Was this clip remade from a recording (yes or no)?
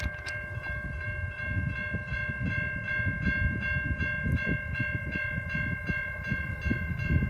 no